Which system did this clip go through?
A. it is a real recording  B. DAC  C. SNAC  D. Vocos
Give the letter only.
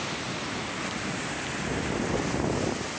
A